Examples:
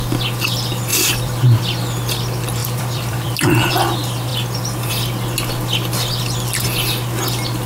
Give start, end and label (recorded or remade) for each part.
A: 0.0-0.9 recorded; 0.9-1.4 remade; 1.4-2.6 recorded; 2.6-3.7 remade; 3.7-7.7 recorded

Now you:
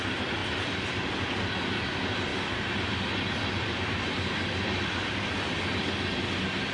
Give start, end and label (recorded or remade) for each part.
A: 0.0-2.3 recorded; 2.3-2.9 remade; 2.9-6.7 recorded

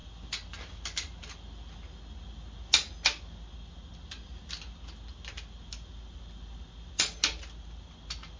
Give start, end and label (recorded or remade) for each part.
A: 0.0-8.4 recorded

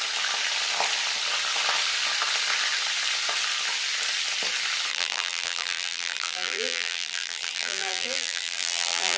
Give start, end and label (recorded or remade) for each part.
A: 0.0-4.9 recorded; 4.9-9.2 remade